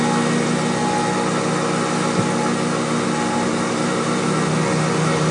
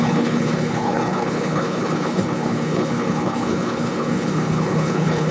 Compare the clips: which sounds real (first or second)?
first